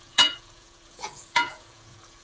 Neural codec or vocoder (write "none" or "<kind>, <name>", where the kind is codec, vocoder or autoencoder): vocoder, Vocos